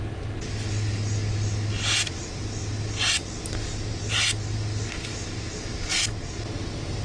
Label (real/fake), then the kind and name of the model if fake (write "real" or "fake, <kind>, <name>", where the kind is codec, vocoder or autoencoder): real